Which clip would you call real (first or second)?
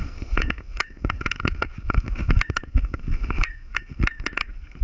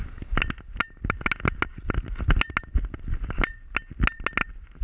second